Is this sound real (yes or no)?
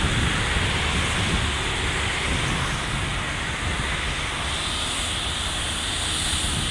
yes